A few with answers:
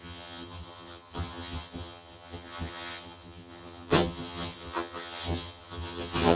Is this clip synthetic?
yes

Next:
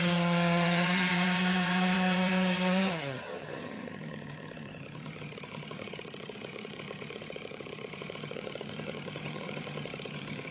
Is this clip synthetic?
yes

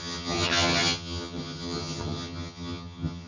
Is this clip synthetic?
yes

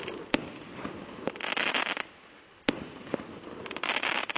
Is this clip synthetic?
no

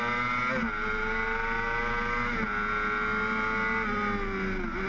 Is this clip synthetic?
no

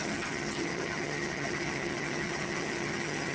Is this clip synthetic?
yes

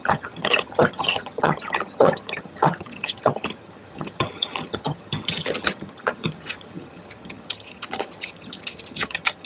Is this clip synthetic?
yes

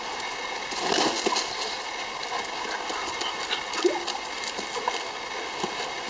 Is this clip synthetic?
no